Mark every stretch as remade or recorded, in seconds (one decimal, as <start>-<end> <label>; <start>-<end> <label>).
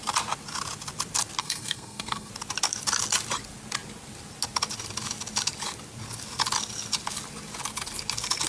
0.0-1.4 recorded; 1.4-2.3 remade; 2.3-8.5 recorded